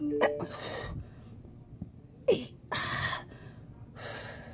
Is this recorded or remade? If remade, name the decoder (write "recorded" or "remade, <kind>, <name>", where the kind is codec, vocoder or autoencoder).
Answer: recorded